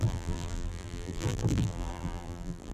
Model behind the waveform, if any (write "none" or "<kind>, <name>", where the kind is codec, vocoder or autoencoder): vocoder, BigVGAN v2